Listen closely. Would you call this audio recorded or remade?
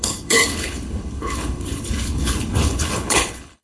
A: remade